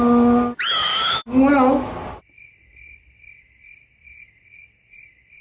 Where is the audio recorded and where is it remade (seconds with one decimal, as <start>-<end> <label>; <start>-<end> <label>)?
0.0-0.9 recorded; 0.9-1.9 remade; 1.9-5.4 recorded